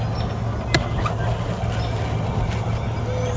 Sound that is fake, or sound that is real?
real